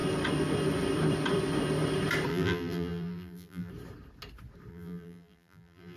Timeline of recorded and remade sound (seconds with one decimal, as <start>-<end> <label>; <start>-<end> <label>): 0.0-2.3 recorded; 2.3-3.7 remade; 3.7-4.7 recorded; 4.7-6.0 remade